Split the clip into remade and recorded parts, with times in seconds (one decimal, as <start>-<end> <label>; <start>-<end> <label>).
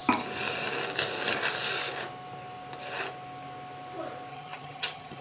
0.0-4.3 recorded; 4.3-5.2 remade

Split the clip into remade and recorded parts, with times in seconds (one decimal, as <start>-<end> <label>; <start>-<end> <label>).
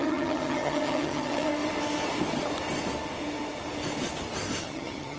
0.0-1.5 remade; 1.5-4.6 recorded; 4.6-5.2 remade